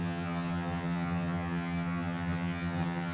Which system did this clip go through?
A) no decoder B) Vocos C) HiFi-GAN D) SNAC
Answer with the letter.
C